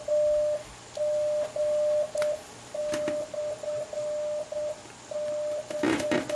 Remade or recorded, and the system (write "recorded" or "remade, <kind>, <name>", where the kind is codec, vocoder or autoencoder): recorded